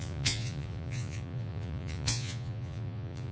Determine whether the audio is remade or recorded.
remade